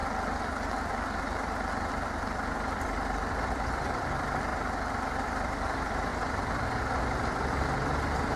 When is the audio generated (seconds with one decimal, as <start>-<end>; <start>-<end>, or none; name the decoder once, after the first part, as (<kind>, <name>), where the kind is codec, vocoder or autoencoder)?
3.7-4.5 (vocoder, BigVGAN v2); 5.0-6.1; 6.8-8.4